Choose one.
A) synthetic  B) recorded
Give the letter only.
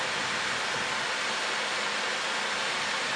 B